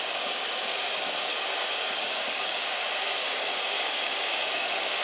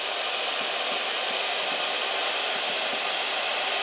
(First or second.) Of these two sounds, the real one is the second